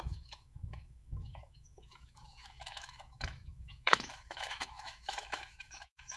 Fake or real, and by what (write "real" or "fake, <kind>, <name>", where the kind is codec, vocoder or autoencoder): fake, autoencoder, DAC-VAE